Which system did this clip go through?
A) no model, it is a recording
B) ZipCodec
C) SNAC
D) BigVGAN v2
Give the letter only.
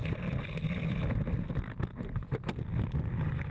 A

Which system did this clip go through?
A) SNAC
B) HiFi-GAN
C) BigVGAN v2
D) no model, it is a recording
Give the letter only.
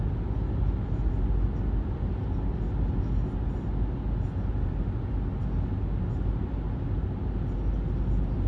D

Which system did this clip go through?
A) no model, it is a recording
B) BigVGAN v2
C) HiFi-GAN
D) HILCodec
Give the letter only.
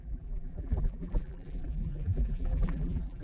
B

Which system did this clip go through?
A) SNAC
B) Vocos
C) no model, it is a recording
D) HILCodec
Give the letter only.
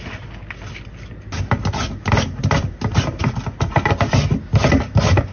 C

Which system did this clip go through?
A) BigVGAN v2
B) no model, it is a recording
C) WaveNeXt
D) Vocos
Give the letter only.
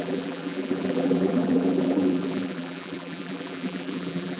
A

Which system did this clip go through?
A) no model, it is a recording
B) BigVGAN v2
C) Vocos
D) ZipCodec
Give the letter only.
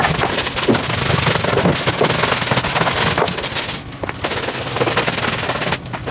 A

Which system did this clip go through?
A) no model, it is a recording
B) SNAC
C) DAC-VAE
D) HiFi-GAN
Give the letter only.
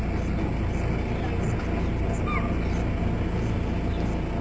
A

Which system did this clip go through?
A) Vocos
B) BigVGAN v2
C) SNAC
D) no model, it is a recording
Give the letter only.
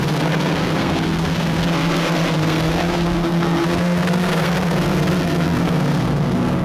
C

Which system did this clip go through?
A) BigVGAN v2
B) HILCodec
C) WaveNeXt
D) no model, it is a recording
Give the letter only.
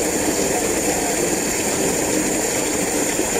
D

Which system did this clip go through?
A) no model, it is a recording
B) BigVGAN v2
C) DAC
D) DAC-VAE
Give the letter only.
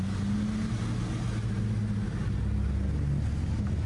A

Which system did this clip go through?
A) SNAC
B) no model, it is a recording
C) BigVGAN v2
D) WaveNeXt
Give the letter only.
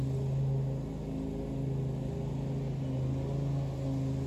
B